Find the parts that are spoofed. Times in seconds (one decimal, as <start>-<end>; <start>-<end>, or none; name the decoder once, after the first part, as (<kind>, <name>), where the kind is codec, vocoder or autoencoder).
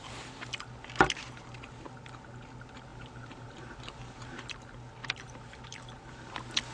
2.9-4.5 (vocoder, BigVGAN v2); 5.0-6.3